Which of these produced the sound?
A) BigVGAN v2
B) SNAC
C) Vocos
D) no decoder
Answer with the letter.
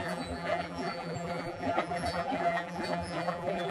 A